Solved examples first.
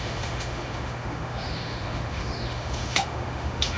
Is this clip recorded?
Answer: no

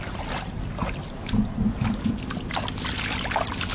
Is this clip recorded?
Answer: yes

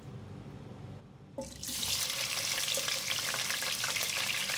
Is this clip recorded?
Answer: yes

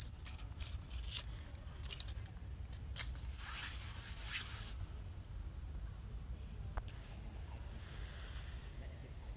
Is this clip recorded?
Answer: yes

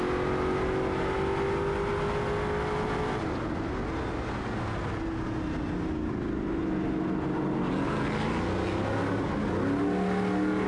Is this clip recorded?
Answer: yes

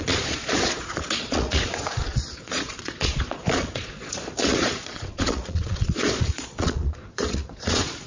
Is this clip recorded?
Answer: no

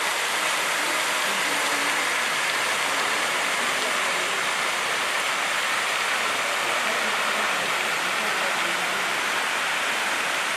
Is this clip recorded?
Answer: yes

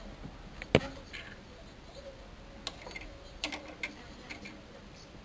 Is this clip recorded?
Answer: yes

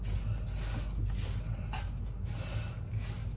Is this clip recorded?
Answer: yes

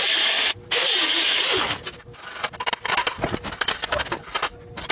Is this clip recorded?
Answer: yes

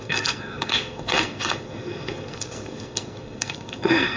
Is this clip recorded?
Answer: no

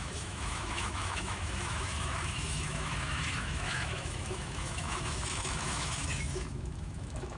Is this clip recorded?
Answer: no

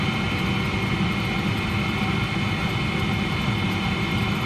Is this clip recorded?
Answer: yes